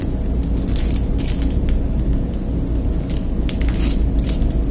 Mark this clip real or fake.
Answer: real